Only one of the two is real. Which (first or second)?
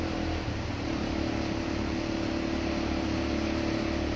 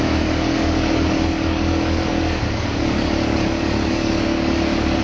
first